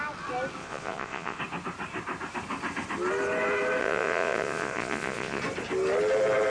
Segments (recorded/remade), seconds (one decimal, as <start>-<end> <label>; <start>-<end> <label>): 0.0-0.6 recorded; 0.6-1.4 remade; 1.4-3.8 recorded; 3.8-5.4 remade; 5.4-6.5 recorded